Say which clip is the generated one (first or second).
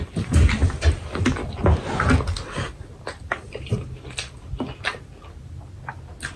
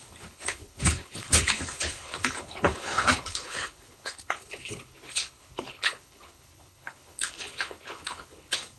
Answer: second